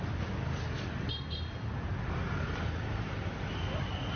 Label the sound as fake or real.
real